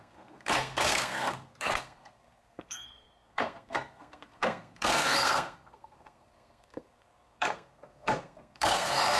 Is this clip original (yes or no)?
no